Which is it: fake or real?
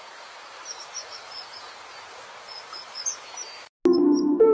real